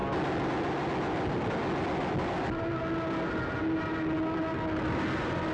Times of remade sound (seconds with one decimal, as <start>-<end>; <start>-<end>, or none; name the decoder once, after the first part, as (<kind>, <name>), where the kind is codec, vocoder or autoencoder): none

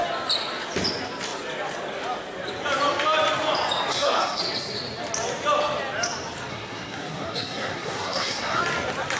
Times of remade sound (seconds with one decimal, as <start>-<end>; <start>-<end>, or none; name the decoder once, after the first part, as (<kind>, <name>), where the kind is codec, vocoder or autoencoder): 3.9-4.4 (codec, SNAC); 6.5-8.6

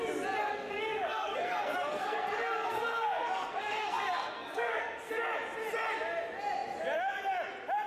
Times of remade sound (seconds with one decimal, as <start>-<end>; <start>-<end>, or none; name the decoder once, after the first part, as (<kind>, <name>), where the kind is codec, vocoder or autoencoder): 0.4-5.1 (codec, SNAC)

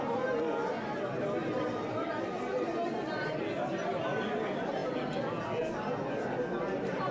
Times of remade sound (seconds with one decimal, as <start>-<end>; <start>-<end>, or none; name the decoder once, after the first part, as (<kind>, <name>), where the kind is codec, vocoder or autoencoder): none

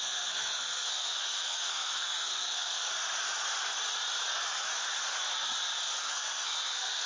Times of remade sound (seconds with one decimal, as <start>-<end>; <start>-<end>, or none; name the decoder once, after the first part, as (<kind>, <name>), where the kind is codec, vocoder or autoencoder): 0.0-2.9 (codec, SNAC); 6.0-7.1